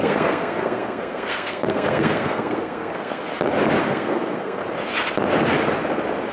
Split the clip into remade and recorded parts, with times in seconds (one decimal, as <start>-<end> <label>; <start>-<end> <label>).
0.0-3.2 remade; 3.2-3.8 recorded; 3.8-4.6 remade; 4.6-6.3 recorded